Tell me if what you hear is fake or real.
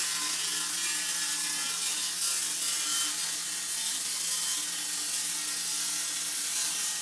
real